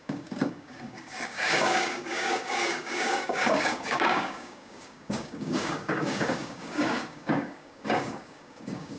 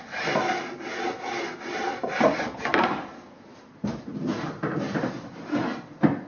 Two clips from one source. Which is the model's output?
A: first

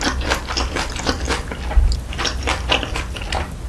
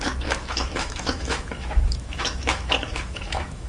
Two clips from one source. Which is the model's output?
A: second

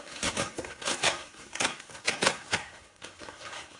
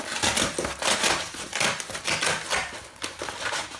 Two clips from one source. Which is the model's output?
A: first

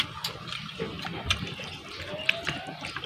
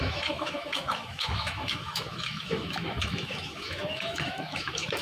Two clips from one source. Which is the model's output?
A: second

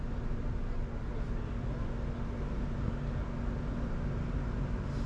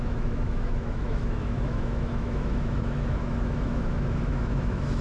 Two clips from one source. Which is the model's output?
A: second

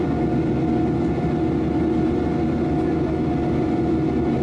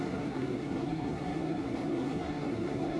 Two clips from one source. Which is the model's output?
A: second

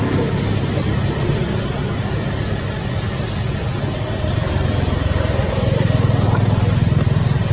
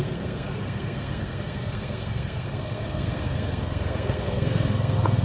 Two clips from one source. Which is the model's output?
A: second